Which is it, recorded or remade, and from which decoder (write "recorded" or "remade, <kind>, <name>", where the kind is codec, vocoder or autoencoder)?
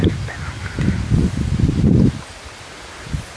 recorded